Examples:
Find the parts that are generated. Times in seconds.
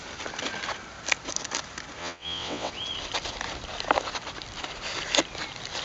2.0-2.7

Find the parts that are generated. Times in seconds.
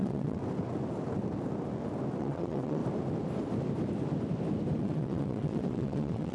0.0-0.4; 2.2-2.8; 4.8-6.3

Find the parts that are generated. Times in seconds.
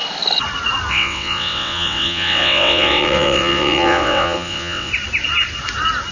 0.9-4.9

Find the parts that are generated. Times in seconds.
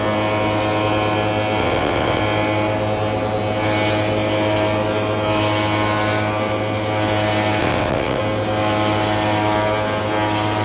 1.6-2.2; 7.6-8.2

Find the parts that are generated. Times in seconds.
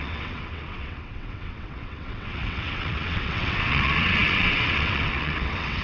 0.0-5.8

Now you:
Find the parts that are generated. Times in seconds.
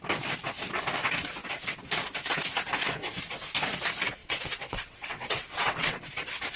4.2-6.1